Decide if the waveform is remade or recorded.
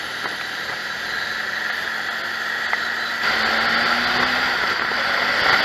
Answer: recorded